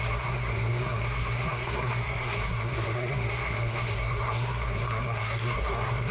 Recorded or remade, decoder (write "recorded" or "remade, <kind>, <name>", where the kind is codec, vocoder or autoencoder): remade, codec, SNAC